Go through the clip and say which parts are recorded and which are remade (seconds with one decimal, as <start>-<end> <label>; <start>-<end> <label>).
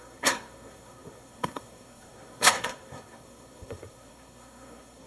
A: 0.0-5.1 remade